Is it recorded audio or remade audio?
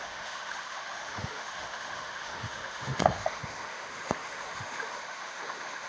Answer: remade